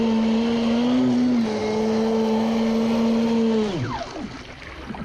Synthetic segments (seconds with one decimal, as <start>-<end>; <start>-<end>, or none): none